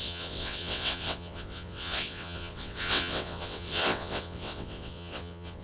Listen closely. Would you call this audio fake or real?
fake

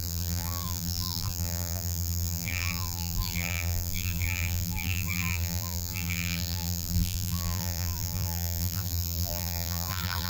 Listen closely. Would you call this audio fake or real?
fake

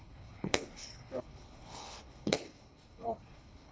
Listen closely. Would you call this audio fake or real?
fake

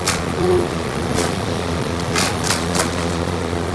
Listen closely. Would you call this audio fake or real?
fake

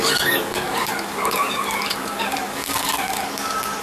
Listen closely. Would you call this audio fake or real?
fake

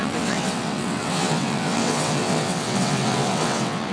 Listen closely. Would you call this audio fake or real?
fake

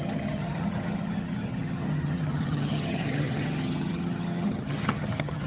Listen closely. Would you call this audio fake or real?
fake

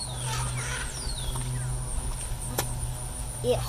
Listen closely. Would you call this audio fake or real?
real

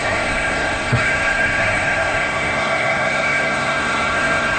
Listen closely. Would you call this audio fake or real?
fake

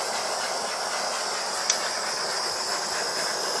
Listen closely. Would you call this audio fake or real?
real